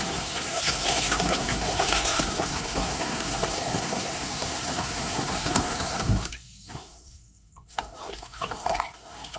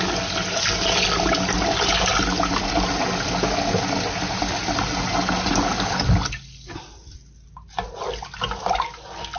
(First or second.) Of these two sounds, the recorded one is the second